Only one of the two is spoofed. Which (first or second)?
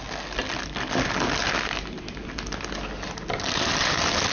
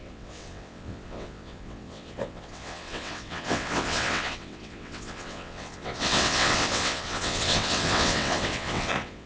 second